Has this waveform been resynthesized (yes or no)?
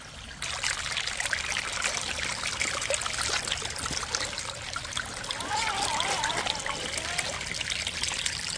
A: no